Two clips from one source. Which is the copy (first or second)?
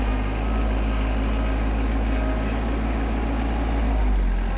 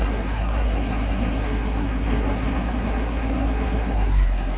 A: second